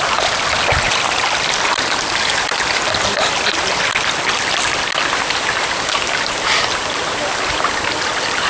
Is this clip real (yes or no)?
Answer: yes